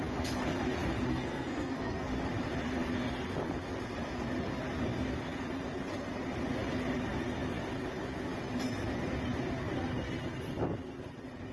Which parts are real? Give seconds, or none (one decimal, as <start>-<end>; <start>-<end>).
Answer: 0.0-1.1; 2.1-11.5